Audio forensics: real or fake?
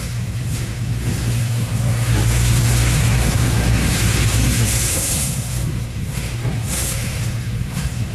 fake